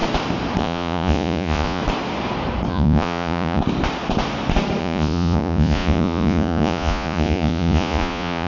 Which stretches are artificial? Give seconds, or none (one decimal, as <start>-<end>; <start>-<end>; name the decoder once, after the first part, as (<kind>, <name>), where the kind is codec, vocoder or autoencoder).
0.6-1.8 (vocoder, Vocos); 2.7-3.6; 4.8-8.5